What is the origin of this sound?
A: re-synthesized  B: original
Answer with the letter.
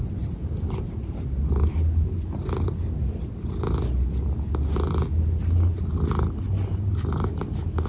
B